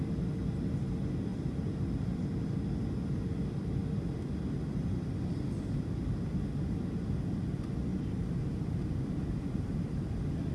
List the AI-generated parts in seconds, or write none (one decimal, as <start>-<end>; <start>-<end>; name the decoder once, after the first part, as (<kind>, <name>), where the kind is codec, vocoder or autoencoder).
7.9-10.1 (vocoder, BigVGAN v2)